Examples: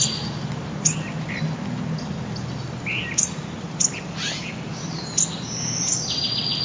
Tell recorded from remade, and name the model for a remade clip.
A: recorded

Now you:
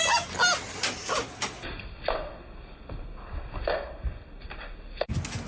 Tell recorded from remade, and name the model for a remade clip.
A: recorded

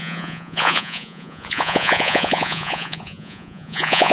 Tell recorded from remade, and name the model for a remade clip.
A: remade, vocoder, Vocos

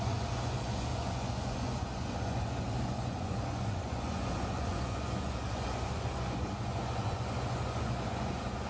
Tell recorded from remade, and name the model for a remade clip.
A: remade, vocoder, Vocos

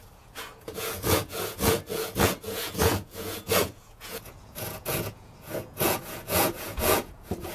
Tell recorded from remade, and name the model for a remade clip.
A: remade, vocoder, Vocos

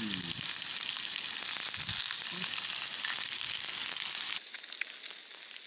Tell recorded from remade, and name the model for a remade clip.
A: recorded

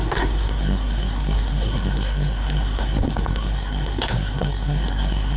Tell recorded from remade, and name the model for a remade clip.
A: remade, codec, SNAC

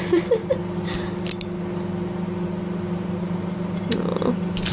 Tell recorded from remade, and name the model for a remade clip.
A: recorded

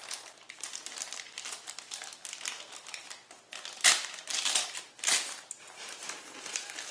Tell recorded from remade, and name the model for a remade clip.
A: recorded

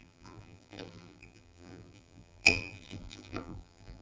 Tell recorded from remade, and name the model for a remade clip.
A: remade, vocoder, BigVGAN v2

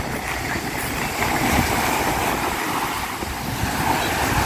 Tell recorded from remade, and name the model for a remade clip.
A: recorded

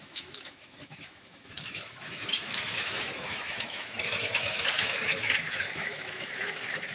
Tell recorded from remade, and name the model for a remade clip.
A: remade, autoencoder, DAC-VAE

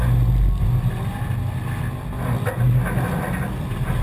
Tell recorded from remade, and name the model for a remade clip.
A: recorded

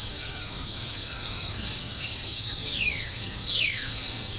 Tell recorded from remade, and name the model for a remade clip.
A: remade, codec, SNAC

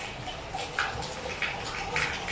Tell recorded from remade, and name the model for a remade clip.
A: recorded